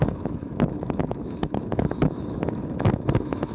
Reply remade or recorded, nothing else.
remade